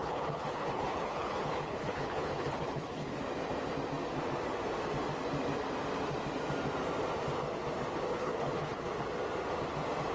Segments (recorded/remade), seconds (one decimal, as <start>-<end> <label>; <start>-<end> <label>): 0.0-3.2 remade; 3.2-8.1 recorded; 8.1-8.9 remade; 8.9-10.1 recorded